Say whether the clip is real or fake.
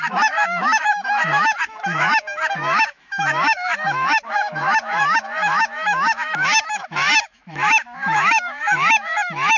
fake